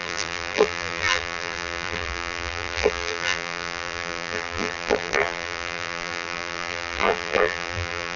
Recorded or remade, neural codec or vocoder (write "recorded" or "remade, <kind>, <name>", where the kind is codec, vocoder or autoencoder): remade, vocoder, BigVGAN v2